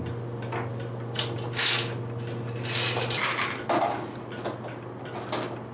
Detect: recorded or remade recorded